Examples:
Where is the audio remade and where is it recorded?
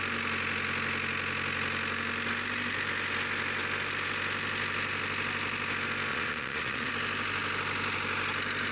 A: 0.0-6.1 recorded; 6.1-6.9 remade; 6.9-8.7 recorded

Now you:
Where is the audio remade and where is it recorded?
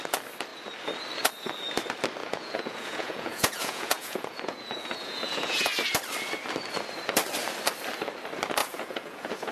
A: 0.0-2.2 recorded; 2.2-5.7 remade; 5.7-8.6 recorded; 8.6-9.5 remade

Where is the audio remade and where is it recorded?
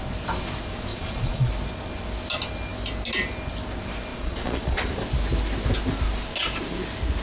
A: 0.0-0.9 recorded; 0.9-1.5 remade; 1.5-4.1 recorded; 4.1-4.9 remade; 4.9-7.2 recorded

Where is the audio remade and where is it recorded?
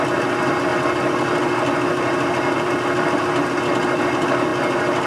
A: 0.0-5.1 recorded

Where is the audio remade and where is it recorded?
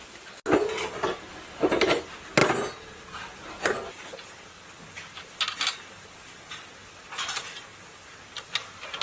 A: 0.0-9.0 recorded